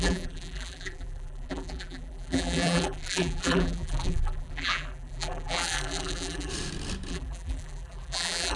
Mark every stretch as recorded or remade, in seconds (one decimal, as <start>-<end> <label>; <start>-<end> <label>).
0.0-6.5 remade; 6.5-7.1 recorded; 7.1-8.6 remade